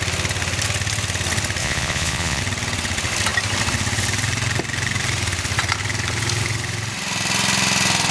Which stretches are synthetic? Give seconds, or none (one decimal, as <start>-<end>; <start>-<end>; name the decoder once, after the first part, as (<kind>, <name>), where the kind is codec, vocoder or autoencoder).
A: 1.6-2.4 (vocoder, Vocos)